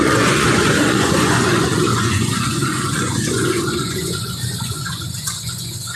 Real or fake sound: fake